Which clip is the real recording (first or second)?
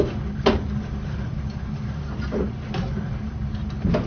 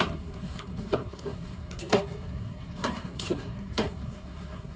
first